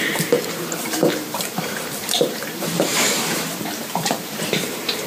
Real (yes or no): no